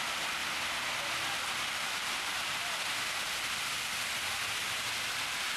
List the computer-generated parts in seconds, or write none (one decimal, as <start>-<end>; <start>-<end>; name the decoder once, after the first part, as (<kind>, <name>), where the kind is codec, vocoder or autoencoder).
0.0-0.4 (vocoder, BigVGAN v2); 2.0-2.6; 4.8-5.6